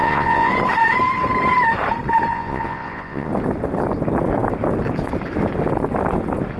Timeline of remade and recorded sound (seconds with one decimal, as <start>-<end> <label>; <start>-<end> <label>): 0.0-0.5 remade; 0.5-2.3 recorded; 2.3-3.3 remade; 3.3-6.6 recorded